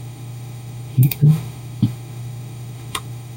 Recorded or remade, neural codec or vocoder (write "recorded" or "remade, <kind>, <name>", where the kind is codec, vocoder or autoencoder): remade, autoencoder, DAC-VAE